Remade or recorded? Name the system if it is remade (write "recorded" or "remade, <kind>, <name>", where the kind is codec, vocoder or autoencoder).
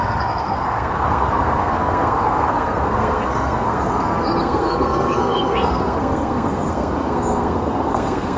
remade, codec, SNAC